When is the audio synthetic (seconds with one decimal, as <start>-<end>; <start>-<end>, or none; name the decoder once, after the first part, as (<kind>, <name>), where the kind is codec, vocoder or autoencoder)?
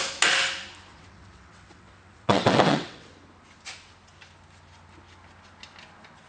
0.9-3.1 (vocoder, WaveNeXt)